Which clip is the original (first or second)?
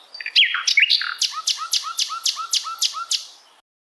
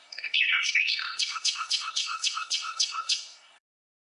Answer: first